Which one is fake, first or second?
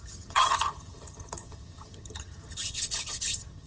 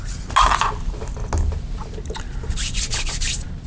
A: first